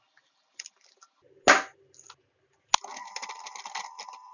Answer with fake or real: real